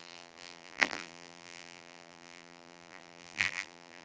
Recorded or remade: remade